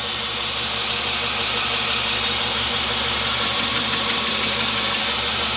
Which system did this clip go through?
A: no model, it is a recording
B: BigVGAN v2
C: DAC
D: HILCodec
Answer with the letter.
B